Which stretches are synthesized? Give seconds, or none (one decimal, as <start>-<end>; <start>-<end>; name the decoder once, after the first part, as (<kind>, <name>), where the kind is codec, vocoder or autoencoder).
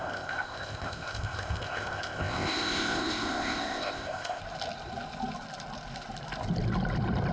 0.0-4.4 (codec, ZipCodec)